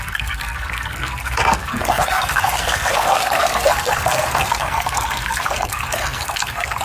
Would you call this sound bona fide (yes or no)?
no